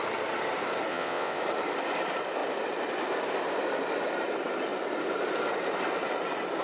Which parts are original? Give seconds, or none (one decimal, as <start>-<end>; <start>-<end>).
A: 0.0-0.9; 1.4-6.6